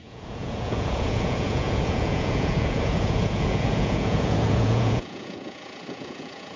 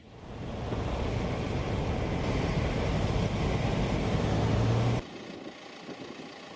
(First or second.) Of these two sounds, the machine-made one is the first